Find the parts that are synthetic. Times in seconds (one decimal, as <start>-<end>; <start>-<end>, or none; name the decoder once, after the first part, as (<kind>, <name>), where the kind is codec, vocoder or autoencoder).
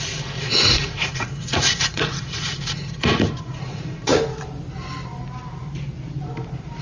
0.0-4.1 (vocoder, Vocos)